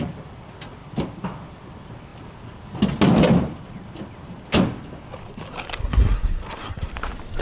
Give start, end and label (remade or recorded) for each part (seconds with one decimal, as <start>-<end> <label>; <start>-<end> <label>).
0.0-5.8 recorded; 5.8-6.9 remade; 6.9-7.4 recorded